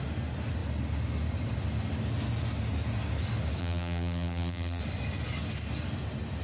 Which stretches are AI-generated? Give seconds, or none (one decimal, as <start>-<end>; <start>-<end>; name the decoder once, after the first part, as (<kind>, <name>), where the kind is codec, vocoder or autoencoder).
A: 3.6-4.8 (vocoder, BigVGAN v2)